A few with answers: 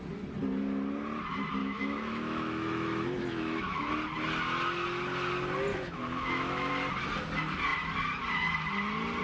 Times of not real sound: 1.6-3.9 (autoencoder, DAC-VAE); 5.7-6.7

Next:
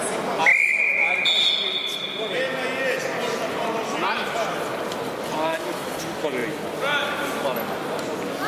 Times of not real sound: 5.5-6.0 (codec, DAC)

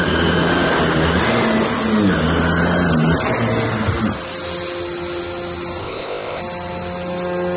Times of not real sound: 5.8-6.4 (codec, ZipCodec)